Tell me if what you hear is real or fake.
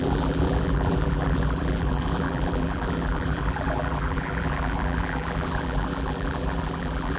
fake